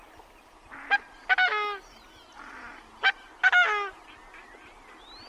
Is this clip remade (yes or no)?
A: no